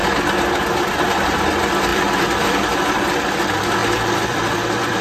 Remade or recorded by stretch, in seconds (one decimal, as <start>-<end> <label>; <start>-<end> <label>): 0.0-1.9 recorded; 1.9-3.3 remade; 3.3-3.8 recorded; 3.8-5.0 remade